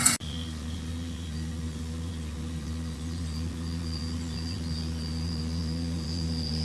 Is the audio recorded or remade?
remade